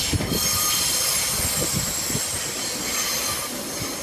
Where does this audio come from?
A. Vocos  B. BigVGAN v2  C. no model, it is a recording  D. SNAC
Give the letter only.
C